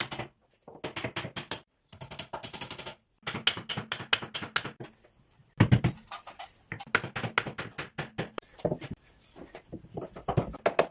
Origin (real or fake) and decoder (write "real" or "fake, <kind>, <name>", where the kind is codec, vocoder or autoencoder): real